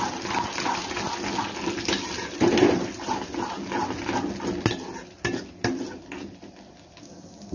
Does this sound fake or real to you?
real